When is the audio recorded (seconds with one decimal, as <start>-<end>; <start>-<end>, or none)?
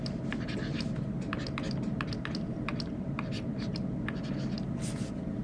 0.0-5.4